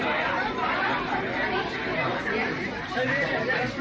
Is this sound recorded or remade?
recorded